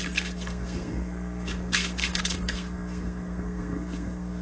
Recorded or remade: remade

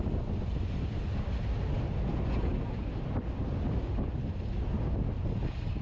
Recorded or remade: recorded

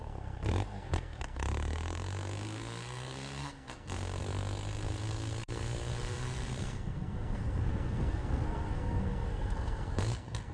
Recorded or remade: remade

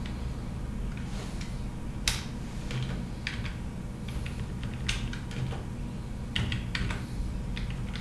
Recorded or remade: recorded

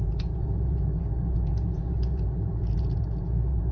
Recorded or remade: remade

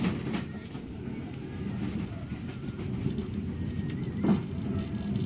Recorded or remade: recorded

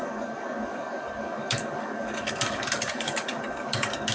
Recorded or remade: remade